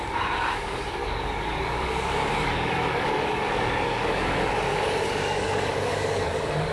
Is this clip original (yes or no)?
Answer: no